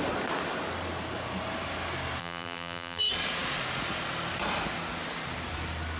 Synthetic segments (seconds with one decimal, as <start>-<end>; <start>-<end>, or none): 2.2-3.0